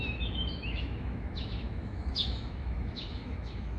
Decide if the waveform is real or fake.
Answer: fake